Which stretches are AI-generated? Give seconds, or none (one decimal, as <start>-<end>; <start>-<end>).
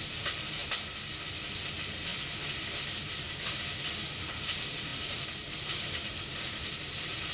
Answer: 0.0-0.6; 1.5-2.1; 4.2-7.3